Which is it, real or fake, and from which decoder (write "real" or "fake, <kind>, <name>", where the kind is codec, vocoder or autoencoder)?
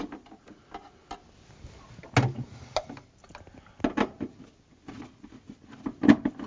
real